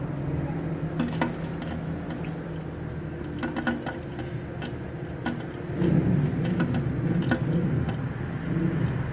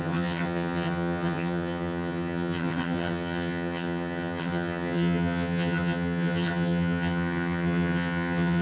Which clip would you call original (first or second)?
first